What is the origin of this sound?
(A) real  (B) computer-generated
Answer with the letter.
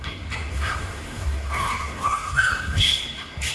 B